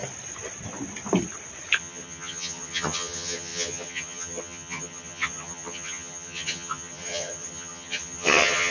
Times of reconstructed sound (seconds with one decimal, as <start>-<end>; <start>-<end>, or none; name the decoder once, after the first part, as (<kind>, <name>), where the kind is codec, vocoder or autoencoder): 1.8-8.7 (vocoder, HiFi-GAN)